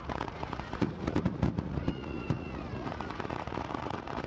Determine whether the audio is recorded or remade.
remade